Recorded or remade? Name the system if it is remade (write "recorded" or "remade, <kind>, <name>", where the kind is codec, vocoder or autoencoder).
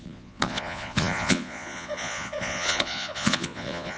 remade, vocoder, Vocos